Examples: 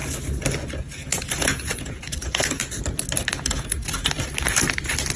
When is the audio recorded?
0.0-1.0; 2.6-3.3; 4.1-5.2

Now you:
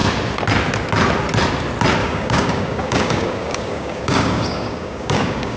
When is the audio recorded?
0.0-2.0

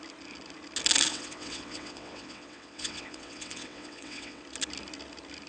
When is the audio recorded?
0.0-1.1; 4.4-5.5

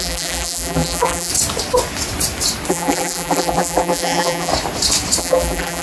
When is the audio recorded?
1.3-2.7; 4.5-5.2

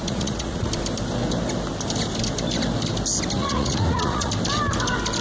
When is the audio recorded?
0.7-3.4; 4.3-5.2

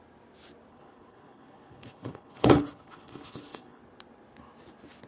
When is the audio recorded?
0.0-0.7; 3.8-5.1

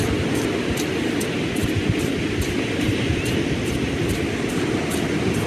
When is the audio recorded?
0.0-5.5

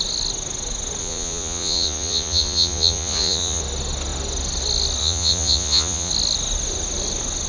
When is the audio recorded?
0.0-1.0; 3.6-5.0; 6.1-7.5